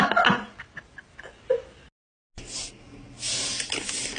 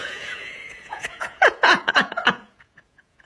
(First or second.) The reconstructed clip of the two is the second